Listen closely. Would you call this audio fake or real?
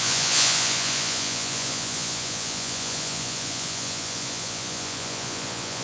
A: fake